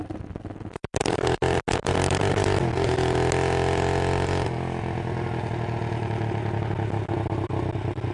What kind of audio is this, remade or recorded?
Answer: recorded